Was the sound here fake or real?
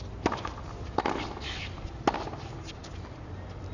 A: real